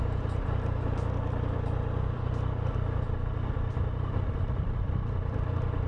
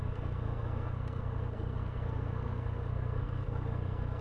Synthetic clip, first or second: second